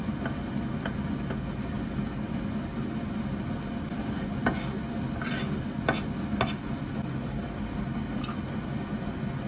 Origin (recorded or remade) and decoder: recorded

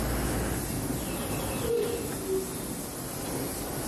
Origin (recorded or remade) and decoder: recorded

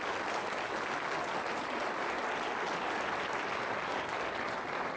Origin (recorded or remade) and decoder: recorded